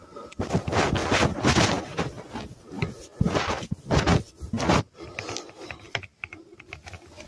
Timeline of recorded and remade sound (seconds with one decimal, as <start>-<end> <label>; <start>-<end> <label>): 0.0-7.3 recorded